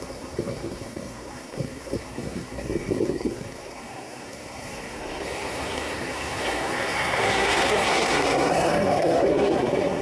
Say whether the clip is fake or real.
fake